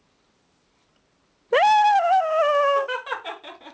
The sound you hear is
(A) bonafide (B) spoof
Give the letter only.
A